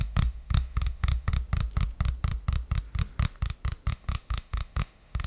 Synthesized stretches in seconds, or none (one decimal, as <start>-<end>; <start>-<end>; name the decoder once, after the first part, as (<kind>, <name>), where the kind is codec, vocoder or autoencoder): 0.0-1.3 (autoencoder, DAC-VAE); 3.9-5.3